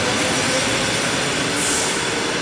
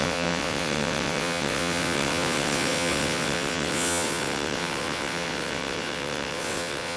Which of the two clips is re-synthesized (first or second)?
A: second